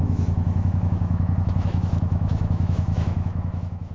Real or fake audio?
fake